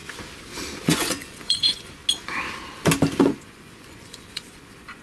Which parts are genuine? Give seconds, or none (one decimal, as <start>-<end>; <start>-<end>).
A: 0.0-0.8; 2.0-3.2